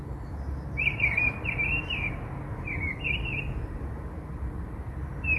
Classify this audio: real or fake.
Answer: real